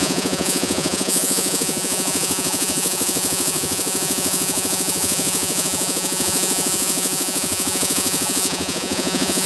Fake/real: fake